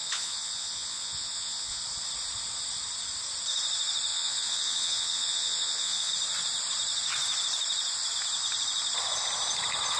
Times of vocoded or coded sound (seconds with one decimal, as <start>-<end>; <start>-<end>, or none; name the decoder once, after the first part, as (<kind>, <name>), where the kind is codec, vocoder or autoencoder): 0.0-1.8 (vocoder, Vocos); 4.1-6.1